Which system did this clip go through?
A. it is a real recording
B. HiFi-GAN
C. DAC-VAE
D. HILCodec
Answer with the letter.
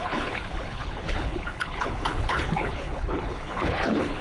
D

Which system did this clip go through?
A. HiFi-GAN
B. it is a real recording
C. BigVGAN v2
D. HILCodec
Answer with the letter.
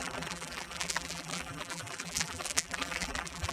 C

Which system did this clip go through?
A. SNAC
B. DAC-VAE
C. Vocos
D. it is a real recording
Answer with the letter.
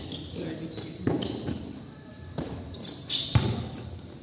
D